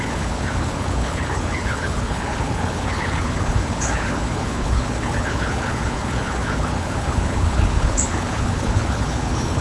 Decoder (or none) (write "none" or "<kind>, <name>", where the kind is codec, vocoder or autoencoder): codec, HILCodec